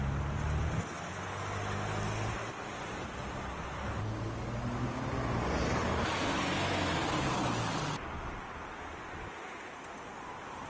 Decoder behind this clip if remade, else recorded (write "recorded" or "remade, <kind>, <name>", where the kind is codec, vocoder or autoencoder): recorded